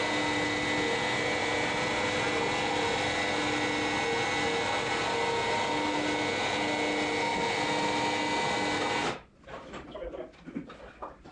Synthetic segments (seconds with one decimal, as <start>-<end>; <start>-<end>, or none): none